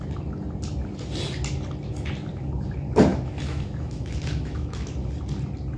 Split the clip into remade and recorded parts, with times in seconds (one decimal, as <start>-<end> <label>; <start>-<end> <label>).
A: 0.0-3.1 recorded; 3.1-4.9 remade; 4.9-5.8 recorded